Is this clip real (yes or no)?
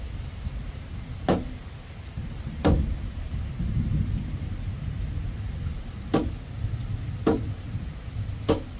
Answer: yes